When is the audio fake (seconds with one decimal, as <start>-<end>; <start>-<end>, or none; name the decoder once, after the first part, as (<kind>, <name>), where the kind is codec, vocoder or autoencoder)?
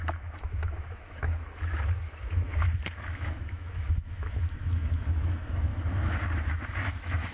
0.0-5.7 (autoencoder, DAC-VAE); 6.4-7.3